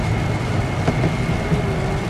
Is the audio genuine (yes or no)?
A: yes